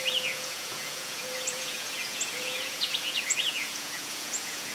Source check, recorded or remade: remade